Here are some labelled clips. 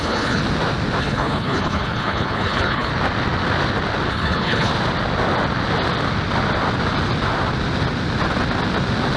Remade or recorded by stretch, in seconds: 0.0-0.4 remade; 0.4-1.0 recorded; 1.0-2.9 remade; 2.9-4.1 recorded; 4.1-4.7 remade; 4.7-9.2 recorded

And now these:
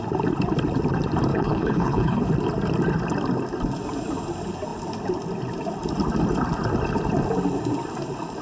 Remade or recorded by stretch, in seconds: 0.0-1.3 recorded; 1.3-2.3 remade; 2.3-8.4 recorded

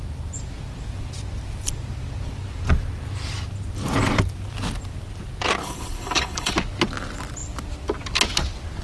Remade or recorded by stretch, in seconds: 0.0-5.6 recorded; 5.6-6.5 remade; 6.5-8.8 recorded